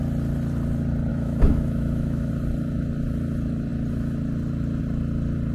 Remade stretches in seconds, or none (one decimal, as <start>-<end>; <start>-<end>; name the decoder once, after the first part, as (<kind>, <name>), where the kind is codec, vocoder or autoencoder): 1.1-2.3 (autoencoder, DAC-VAE)